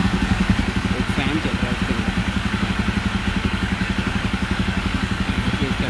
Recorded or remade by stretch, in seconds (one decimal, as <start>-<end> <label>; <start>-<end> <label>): 0.0-0.9 remade; 0.9-2.2 recorded; 2.2-2.7 remade; 2.7-3.2 recorded; 3.2-5.5 remade; 5.5-5.9 recorded